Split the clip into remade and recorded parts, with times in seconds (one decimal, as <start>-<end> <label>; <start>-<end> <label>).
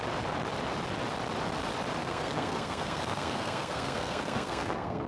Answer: 0.0-2.0 recorded; 2.0-5.1 remade